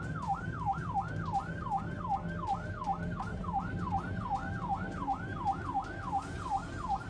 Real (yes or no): yes